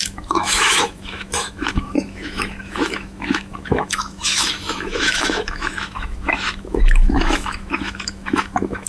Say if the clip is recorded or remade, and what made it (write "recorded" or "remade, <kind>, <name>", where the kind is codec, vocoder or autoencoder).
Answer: remade, autoencoder, DAC-VAE